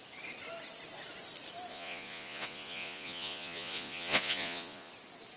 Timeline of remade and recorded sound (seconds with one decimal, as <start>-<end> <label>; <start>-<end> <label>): 0.0-1.7 recorded; 1.7-4.9 remade; 4.9-5.4 recorded